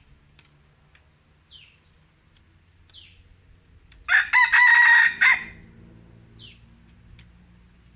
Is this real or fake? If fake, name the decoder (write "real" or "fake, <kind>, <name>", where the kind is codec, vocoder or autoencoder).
real